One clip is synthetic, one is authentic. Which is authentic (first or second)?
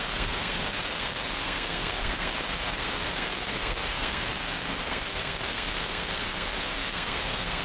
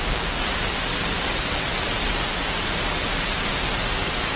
second